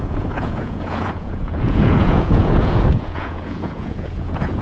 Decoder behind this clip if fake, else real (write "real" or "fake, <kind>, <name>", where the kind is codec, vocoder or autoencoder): fake, vocoder, Vocos